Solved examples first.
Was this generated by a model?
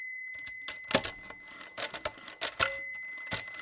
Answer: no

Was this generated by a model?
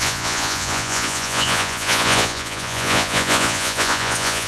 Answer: yes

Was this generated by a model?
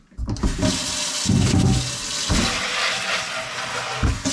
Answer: no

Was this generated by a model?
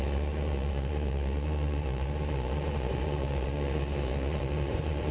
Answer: yes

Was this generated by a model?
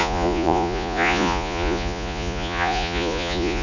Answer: yes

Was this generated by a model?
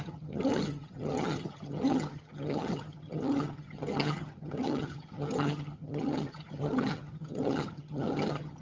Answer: yes